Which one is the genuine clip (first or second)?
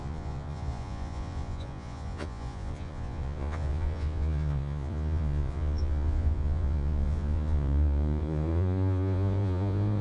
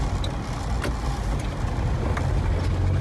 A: second